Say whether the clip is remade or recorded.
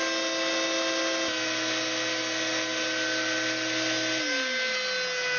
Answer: recorded